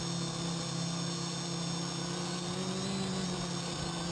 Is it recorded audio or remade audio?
recorded